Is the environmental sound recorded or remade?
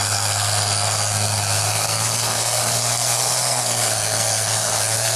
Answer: remade